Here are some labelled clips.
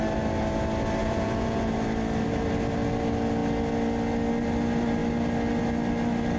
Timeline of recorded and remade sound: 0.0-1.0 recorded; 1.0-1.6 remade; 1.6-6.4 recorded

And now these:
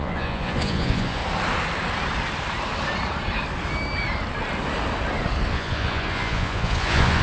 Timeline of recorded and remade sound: 0.0-1.2 remade; 1.2-5.5 recorded; 5.5-7.2 remade

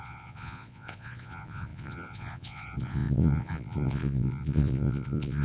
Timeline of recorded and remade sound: 0.0-5.4 remade

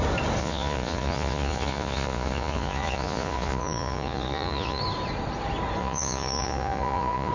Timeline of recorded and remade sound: 0.0-0.4 recorded; 0.4-4.8 remade; 4.8-5.8 recorded; 5.8-7.3 remade

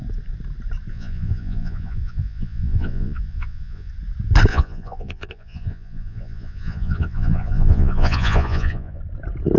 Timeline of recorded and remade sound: 0.0-0.9 recorded; 0.9-3.9 remade; 3.9-4.5 recorded; 4.5-9.0 remade; 9.0-9.6 recorded

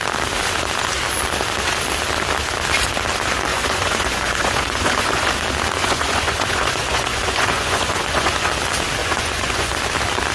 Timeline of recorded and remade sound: 0.0-3.5 recorded; 3.5-5.3 remade; 5.3-5.8 recorded; 5.8-8.5 remade; 8.5-9.0 recorded; 9.0-9.7 remade; 9.7-10.3 recorded

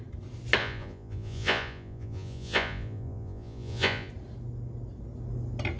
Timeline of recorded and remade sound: 0.0-0.6 recorded; 0.6-4.1 remade; 4.1-5.8 recorded

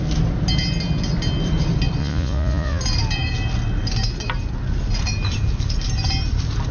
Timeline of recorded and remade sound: 0.0-2.0 recorded; 2.0-2.8 remade; 2.8-6.7 recorded